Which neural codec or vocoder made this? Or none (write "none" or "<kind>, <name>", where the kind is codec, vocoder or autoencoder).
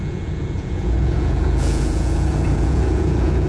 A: vocoder, Vocos